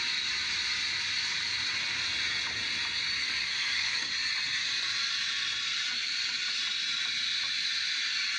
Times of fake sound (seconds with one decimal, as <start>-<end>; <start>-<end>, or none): 3.2-4.1